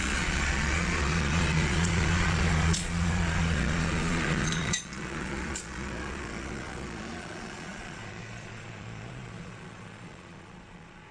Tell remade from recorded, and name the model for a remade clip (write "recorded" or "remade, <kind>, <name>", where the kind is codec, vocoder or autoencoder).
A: remade, vocoder, Vocos